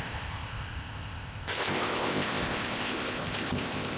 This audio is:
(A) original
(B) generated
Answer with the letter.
B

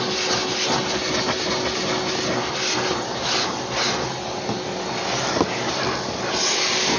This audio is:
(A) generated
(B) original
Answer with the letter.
B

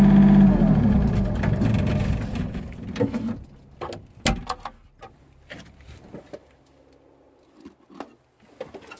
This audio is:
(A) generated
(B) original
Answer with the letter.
B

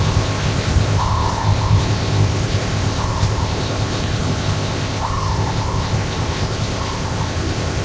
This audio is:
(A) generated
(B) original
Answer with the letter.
A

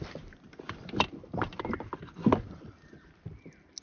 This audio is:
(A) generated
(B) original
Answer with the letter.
B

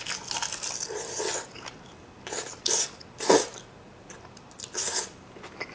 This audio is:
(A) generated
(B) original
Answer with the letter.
B